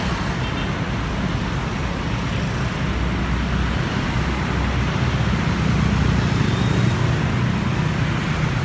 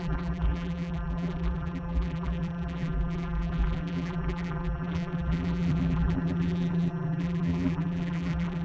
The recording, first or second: first